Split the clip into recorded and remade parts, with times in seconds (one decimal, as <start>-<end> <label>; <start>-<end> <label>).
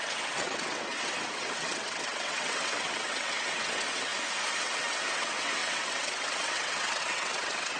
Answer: 0.0-4.1 remade; 4.1-4.6 recorded; 4.6-7.8 remade